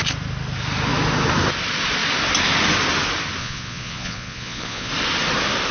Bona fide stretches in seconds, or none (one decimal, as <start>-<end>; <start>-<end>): 0.0-3.4; 4.9-5.7